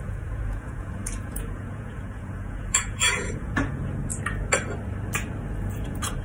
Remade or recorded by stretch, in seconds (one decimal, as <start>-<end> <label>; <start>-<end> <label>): 0.0-4.1 remade; 4.1-5.7 recorded; 5.7-6.2 remade